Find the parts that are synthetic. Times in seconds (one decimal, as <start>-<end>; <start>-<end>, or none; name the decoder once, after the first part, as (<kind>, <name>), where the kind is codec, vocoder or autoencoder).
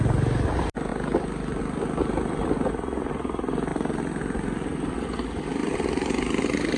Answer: 3.7-4.2 (vocoder, BigVGAN v2); 5.6-6.1